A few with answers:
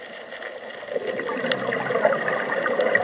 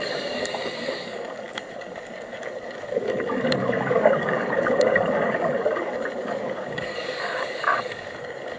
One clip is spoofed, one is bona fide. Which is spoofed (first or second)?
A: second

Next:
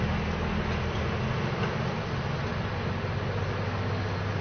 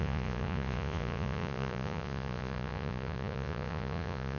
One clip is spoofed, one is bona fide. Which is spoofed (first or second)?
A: second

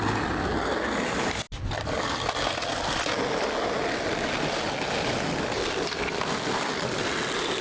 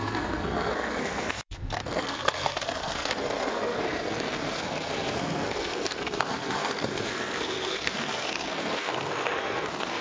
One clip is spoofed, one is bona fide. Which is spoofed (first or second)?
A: second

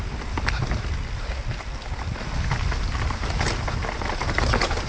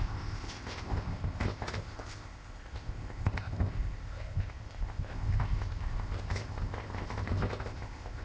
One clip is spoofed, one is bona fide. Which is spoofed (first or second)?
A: second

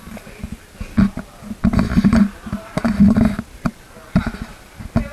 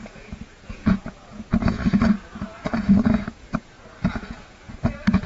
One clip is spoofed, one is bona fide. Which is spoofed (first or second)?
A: second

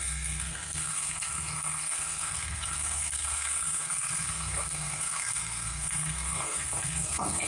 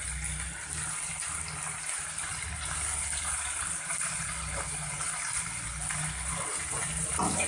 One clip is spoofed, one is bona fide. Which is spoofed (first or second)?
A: first